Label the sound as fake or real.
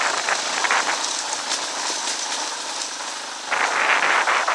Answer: real